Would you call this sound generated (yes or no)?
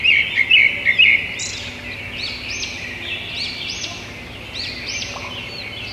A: no